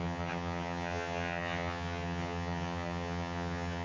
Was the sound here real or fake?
fake